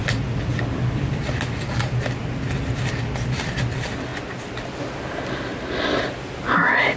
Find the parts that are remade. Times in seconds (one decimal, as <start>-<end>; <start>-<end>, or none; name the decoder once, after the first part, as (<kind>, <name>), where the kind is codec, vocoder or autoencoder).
none